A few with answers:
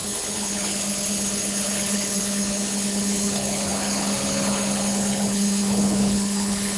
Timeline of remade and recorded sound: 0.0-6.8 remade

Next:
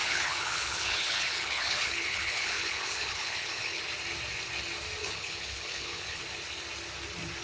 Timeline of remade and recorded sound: 0.0-3.8 remade; 3.8-5.0 recorded; 5.0-6.2 remade; 6.2-7.4 recorded

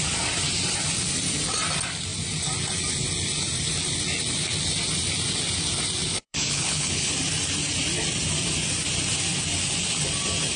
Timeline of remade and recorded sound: 0.0-6.1 recorded; 6.1-7.1 remade; 7.1-10.6 recorded